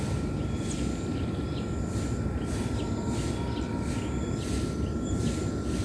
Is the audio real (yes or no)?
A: yes